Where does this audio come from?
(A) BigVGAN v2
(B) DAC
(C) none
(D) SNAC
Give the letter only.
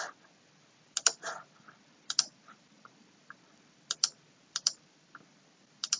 A